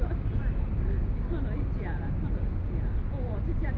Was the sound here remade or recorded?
recorded